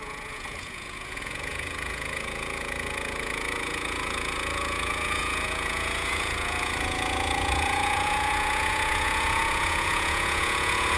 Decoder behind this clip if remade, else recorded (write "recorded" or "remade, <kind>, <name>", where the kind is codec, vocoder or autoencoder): remade, vocoder, Vocos